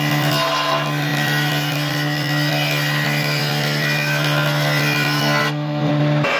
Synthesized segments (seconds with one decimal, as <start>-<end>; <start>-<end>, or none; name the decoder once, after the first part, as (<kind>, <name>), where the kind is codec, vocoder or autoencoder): 5.4-5.9 (codec, SNAC)